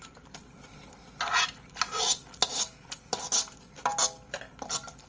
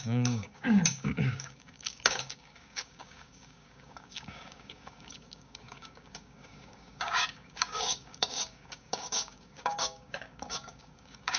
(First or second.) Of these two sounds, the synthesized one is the second